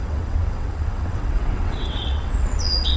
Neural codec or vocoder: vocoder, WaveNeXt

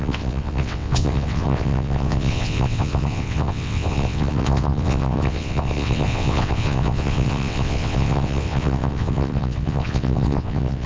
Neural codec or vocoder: vocoder, WaveNeXt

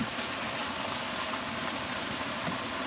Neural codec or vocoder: none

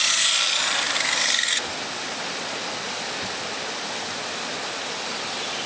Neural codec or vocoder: none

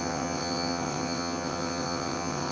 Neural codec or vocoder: vocoder, WaveNeXt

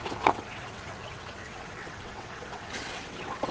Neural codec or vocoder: vocoder, WaveNeXt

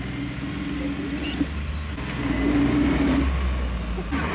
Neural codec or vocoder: none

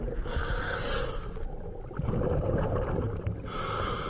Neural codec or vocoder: none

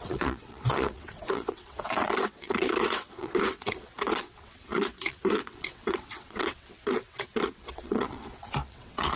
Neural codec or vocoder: vocoder, WaveNeXt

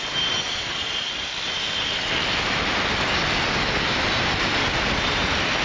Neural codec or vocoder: none